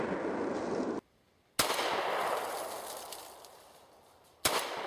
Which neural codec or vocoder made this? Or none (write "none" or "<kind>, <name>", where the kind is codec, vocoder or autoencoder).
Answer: none